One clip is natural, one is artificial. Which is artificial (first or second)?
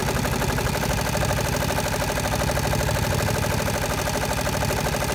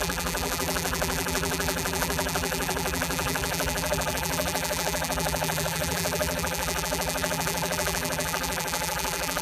second